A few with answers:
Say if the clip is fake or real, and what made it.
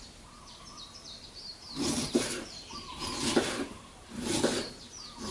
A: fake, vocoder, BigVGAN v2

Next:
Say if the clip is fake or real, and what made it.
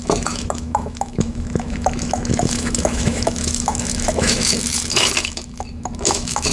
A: fake, autoencoder, DAC-VAE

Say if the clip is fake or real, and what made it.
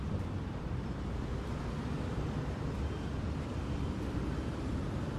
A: fake, vocoder, BigVGAN v2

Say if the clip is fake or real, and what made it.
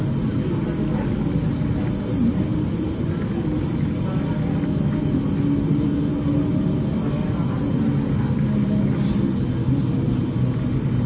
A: real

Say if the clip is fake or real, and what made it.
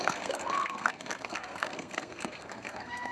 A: fake, codec, SNAC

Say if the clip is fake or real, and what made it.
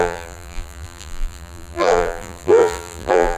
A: fake, vocoder, BigVGAN v2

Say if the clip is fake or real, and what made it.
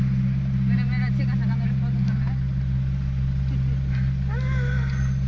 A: real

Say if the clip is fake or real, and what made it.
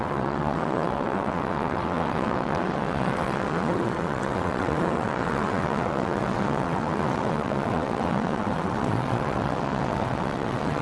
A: fake, vocoder, WaveNeXt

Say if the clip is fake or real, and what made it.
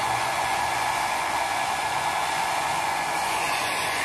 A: fake, vocoder, Vocos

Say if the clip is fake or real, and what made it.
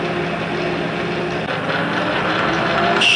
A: real